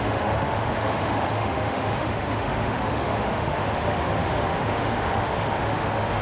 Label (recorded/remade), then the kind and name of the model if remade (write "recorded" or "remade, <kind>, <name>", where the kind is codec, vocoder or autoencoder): remade, autoencoder, DAC-VAE